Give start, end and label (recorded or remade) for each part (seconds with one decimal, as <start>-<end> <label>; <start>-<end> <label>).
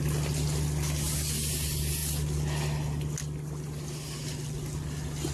0.0-5.3 recorded